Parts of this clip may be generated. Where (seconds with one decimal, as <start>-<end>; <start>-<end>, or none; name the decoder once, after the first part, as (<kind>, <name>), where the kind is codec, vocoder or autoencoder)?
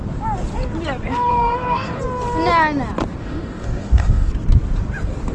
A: 1.3-2.0 (codec, DAC); 3.2-4.3